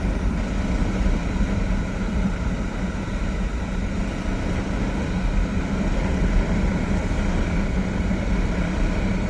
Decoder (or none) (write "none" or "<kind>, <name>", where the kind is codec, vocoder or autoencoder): none